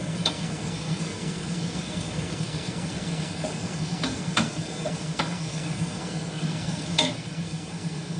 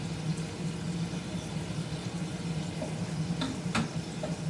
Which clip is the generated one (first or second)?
first